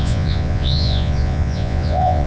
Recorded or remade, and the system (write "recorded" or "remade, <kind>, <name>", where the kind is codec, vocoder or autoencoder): remade, vocoder, Vocos